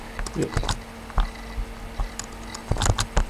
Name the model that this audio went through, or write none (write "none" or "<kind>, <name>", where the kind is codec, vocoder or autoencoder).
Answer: none